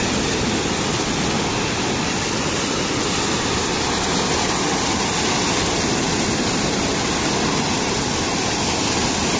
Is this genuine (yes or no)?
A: yes